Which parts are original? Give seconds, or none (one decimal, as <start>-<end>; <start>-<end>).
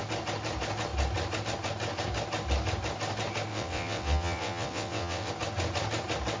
0.0-3.5; 5.3-6.4